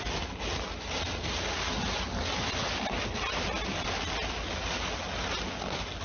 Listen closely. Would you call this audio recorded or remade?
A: recorded